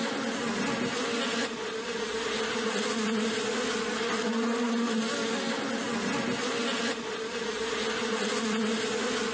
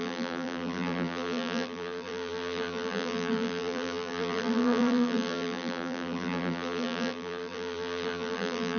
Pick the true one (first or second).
first